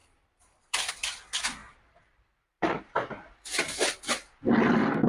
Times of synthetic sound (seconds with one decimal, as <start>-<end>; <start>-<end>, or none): 0.0-0.9; 1.6-2.8